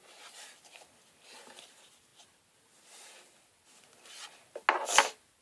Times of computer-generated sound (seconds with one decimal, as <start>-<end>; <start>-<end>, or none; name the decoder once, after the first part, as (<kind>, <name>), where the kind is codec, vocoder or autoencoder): none